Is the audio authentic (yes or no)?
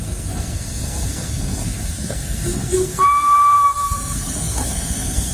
no